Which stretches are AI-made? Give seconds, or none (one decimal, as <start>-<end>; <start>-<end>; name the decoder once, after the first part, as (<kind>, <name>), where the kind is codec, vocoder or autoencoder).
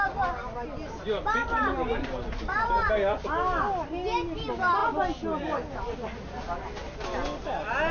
none